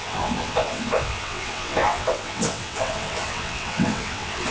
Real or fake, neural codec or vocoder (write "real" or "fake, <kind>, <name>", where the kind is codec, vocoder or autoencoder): fake, vocoder, WaveNeXt